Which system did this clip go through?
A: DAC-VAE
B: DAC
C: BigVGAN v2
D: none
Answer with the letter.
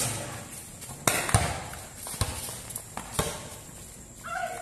D